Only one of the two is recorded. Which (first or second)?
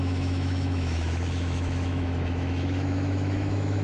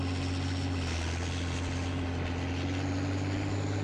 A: second